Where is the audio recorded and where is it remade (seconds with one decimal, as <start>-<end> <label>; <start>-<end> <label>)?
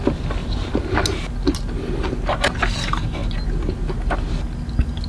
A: 0.0-5.1 recorded